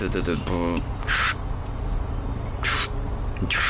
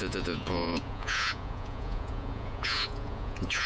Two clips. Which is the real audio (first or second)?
first